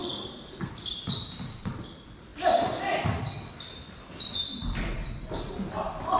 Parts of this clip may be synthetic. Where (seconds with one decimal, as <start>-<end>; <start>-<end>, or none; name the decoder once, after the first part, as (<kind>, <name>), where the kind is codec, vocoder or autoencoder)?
0.0-0.7 (codec, SNAC)